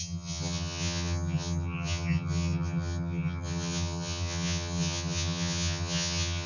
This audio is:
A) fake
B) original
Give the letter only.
A